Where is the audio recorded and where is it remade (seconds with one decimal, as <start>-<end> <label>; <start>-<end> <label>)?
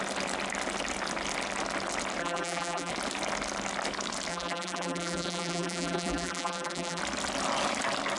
0.0-2.2 recorded; 2.2-2.9 remade; 2.9-4.3 recorded; 4.3-7.0 remade; 7.0-8.2 recorded